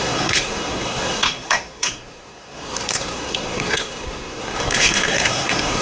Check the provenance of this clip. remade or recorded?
remade